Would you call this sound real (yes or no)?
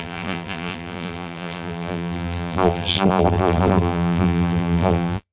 no